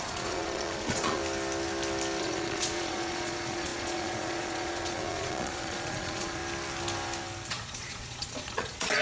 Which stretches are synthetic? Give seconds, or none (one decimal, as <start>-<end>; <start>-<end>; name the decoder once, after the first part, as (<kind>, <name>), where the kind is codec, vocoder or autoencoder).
0.0-1.2 (vocoder, Vocos); 2.2-6.4; 7.5-9.0